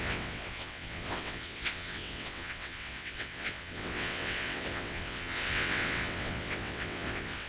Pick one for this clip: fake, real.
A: fake